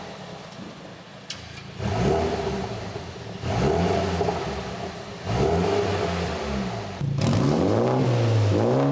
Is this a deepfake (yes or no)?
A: no